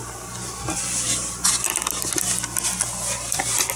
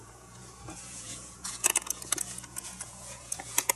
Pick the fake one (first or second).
second